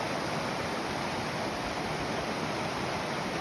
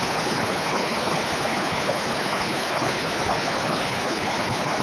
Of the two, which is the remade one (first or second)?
second